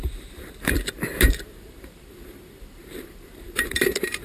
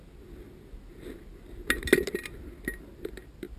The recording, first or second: second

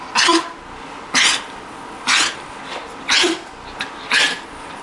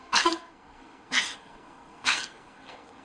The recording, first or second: first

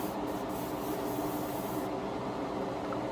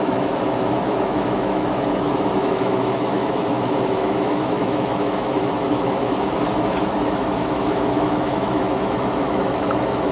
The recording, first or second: first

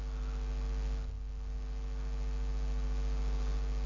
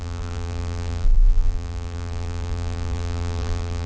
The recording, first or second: first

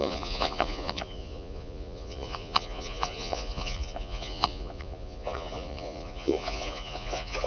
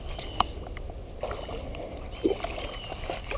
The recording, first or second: second